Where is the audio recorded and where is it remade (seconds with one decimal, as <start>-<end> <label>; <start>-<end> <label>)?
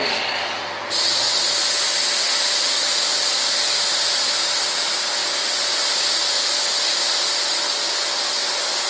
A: 0.0-8.9 recorded